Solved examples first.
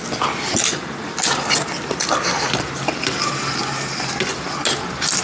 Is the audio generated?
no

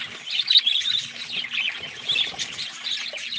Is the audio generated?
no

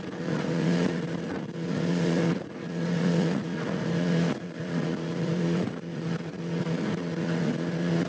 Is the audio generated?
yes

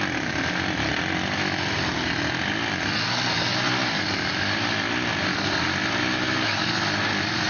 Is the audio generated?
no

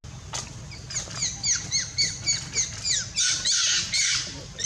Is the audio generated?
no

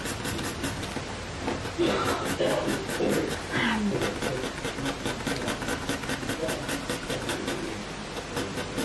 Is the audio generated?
no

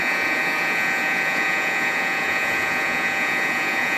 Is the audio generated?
yes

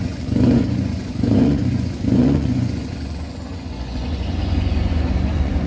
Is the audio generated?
yes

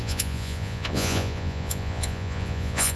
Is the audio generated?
yes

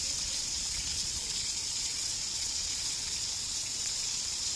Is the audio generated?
yes